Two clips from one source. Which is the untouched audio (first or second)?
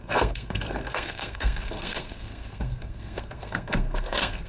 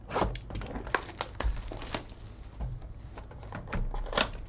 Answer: second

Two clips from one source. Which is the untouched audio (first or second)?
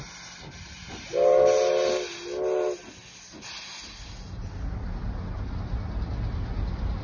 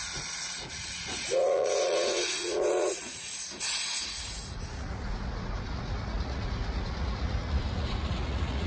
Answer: first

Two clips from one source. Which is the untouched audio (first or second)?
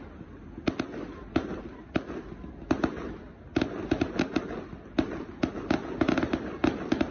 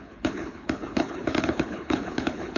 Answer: first